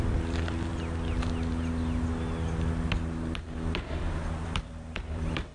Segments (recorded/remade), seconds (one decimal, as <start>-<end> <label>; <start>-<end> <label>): 0.0-0.7 remade; 0.7-4.0 recorded; 4.0-5.5 remade